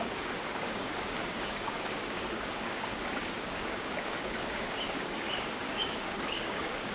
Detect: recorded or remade remade